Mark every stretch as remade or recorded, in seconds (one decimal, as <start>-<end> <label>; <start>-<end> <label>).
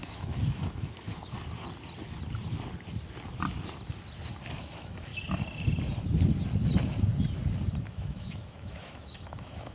0.0-1.2 remade; 1.2-4.6 recorded; 4.6-5.1 remade; 5.1-7.8 recorded; 7.8-9.7 remade